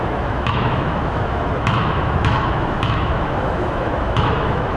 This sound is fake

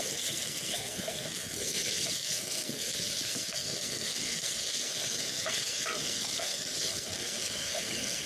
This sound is fake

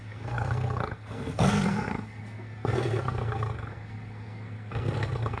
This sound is fake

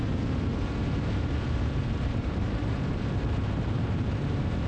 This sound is fake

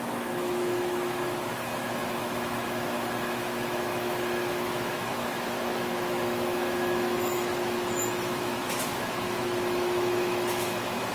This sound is fake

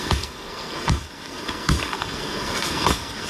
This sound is fake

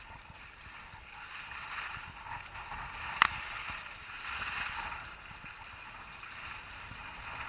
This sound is real